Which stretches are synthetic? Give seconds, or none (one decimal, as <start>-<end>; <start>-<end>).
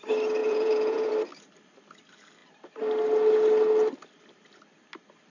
0.4-1.1